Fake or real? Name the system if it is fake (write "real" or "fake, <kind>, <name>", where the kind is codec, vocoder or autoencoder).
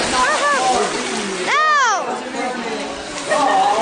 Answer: real